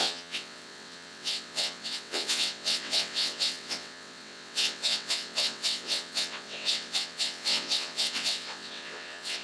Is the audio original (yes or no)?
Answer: no